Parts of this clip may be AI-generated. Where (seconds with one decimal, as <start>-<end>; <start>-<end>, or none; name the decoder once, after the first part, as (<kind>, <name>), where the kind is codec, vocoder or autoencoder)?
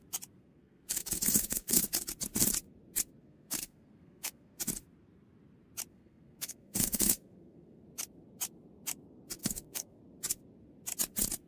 0.4-1.9 (codec, SNAC); 3.2-4.6; 5.9-7.8; 9.4-10.0